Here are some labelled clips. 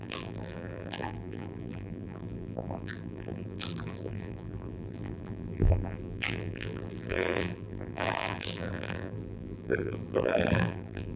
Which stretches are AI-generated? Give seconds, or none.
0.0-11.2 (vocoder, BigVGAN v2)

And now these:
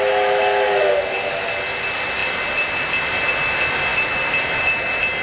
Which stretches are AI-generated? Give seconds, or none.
3.9-4.6 (vocoder, BigVGAN v2)

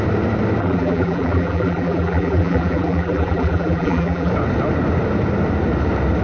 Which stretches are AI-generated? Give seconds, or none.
0.6-4.3 (vocoder, BigVGAN v2)

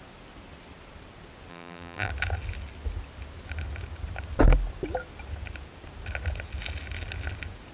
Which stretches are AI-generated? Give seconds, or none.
1.5-2.1 (vocoder, BigVGAN v2)

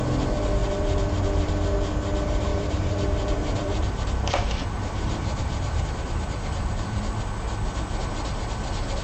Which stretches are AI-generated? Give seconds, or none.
0.6-1.5 (vocoder, BigVGAN v2); 2.5-7.2